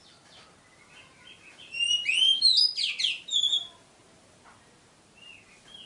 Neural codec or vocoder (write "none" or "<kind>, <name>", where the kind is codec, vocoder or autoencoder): none